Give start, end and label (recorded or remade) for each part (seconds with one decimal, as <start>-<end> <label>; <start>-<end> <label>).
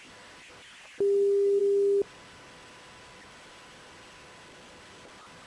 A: 0.0-5.5 recorded